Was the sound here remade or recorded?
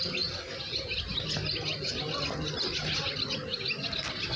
recorded